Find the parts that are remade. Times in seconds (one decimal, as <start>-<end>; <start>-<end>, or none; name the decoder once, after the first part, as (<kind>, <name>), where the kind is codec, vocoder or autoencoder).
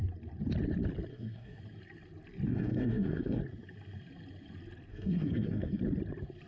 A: 1.1-1.6 (codec, SNAC); 2.5-3.4; 4.9-5.8